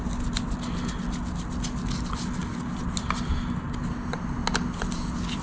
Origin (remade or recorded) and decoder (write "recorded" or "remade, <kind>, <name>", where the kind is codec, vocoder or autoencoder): recorded